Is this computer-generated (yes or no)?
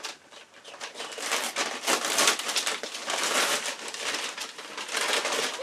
yes